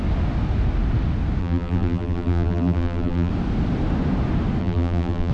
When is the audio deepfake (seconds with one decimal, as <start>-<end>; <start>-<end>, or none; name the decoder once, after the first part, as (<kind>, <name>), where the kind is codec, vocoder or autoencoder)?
1.4-3.3 (vocoder, BigVGAN v2); 4.6-5.3